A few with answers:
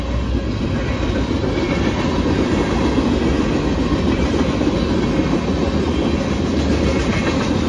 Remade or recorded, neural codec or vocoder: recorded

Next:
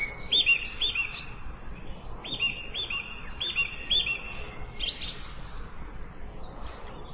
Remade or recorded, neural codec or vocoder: recorded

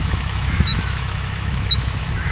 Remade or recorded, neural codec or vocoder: remade, autoencoder, DAC-VAE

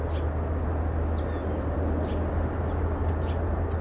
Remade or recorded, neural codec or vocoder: recorded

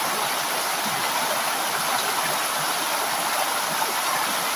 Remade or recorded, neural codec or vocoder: recorded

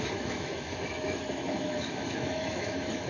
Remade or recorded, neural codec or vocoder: remade, autoencoder, DAC-VAE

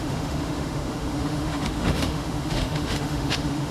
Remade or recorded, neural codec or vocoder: remade, autoencoder, DAC-VAE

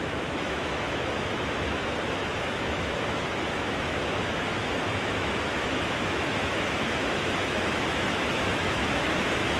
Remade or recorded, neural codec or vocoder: remade, autoencoder, DAC-VAE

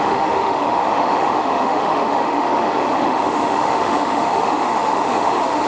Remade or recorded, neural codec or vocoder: remade, autoencoder, DAC-VAE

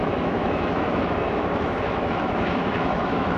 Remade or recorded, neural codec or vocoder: remade, autoencoder, DAC-VAE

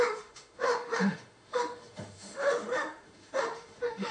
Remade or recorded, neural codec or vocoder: remade, autoencoder, DAC-VAE